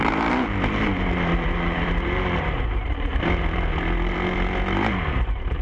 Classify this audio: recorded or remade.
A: remade